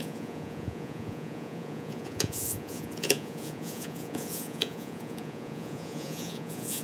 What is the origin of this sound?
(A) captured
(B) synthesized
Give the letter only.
B